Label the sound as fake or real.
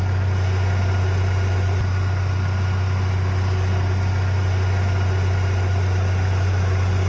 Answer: real